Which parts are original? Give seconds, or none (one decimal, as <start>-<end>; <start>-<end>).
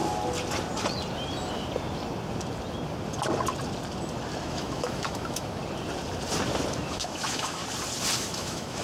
0.0-4.4; 5.6-6.8; 7.6-8.2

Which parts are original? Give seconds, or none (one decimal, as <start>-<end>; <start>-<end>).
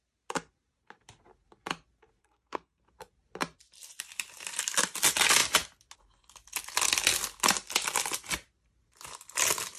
0.0-2.2; 2.8-9.8